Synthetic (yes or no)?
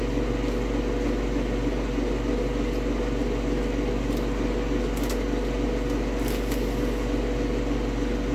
no